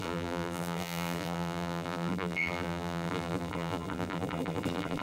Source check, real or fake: fake